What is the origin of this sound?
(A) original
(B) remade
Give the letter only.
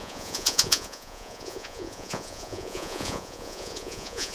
B